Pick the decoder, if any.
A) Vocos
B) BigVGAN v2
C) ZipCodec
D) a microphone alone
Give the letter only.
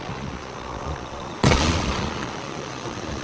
A